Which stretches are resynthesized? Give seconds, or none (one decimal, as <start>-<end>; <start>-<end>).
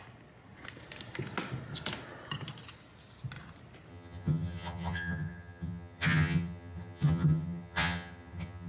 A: 3.9-8.7